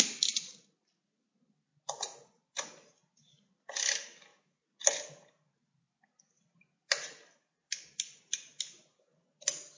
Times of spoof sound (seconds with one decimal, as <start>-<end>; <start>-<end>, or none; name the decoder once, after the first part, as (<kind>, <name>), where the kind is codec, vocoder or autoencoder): none